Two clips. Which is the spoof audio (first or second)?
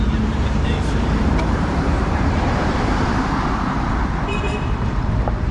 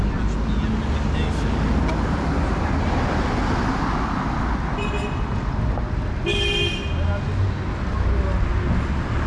first